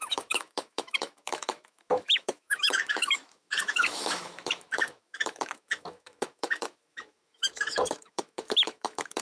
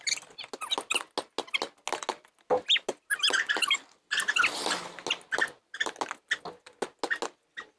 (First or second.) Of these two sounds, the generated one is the first